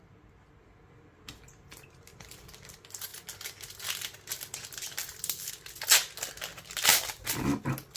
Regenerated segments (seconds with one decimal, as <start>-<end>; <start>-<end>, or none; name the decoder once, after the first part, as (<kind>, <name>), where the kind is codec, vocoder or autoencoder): none